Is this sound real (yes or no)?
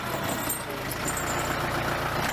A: yes